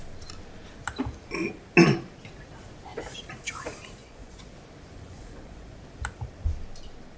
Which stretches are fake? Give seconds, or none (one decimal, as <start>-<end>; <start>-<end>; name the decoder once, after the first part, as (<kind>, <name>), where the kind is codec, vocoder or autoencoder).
4.0-4.5 (vocoder, Vocos); 4.9-5.8